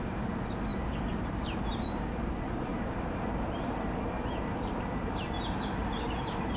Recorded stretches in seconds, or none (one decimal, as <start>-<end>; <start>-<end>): 0.0-0.7; 2.3-2.7; 5.3-5.8